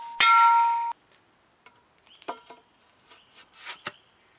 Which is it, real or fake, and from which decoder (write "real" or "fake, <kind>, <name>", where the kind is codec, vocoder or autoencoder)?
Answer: real